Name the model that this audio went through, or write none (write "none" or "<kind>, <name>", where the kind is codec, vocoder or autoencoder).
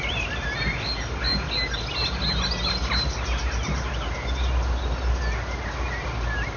none